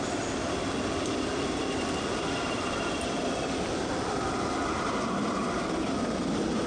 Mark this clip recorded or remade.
remade